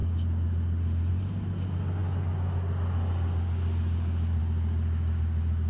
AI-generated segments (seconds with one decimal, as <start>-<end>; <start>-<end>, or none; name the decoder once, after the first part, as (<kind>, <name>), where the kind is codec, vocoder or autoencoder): none

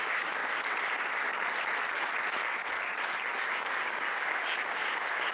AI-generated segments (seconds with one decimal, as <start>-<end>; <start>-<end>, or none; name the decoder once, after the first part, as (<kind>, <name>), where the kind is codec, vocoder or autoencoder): 0.0-0.4 (codec, DAC); 3.3-5.3

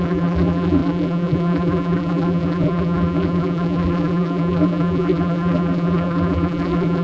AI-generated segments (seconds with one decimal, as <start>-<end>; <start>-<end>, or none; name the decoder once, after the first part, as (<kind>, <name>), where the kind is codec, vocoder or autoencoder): 0.0-7.0 (vocoder, BigVGAN v2)

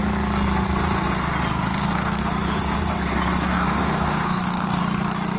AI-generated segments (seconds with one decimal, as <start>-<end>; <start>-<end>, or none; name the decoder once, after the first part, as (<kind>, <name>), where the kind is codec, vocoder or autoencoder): 1.6-2.2 (codec, SNAC); 3.5-4.8

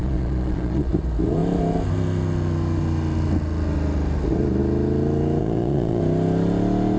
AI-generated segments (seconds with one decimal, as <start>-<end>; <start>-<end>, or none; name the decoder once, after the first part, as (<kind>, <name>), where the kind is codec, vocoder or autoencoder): 0.0-0.9 (vocoder, Vocos); 5.4-6.0

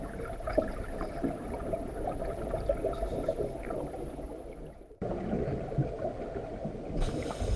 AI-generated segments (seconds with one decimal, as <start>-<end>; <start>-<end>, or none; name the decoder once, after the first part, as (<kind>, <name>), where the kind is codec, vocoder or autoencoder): none

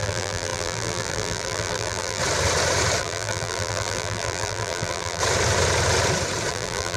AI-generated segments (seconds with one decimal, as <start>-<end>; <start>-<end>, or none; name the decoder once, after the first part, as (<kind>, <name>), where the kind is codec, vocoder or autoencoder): 0.0-2.2 (vocoder, BigVGAN v2); 3.0-5.2; 6.5-7.0